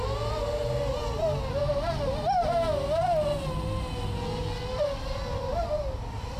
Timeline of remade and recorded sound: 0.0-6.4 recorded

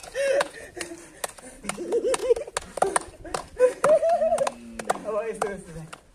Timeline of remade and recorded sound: 0.0-0.8 remade; 0.8-6.1 recorded

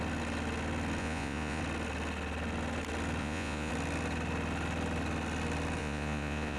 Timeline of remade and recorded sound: 0.0-1.0 recorded; 1.0-1.6 remade; 1.6-3.2 recorded; 3.2-3.7 remade; 3.7-5.8 recorded; 5.8-6.6 remade

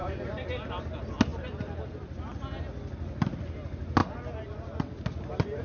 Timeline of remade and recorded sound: 0.0-5.6 recorded

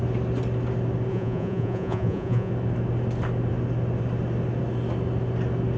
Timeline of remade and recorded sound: 0.0-1.1 recorded; 1.1-2.5 remade; 2.5-5.8 recorded

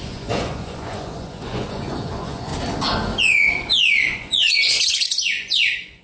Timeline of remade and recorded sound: 0.0-2.5 remade; 2.5-3.2 recorded; 3.2-6.0 remade

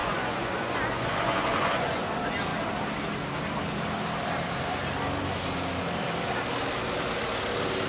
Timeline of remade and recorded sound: 0.0-2.1 remade; 2.1-7.9 recorded